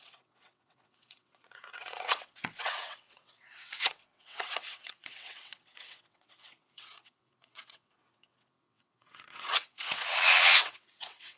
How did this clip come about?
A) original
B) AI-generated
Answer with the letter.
B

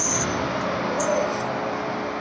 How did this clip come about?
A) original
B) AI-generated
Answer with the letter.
A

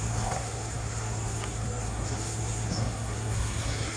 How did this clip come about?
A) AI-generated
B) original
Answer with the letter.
A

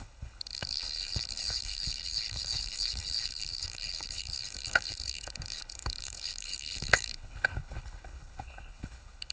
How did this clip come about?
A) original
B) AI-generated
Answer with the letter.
B